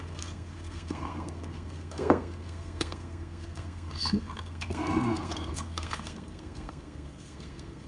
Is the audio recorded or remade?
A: remade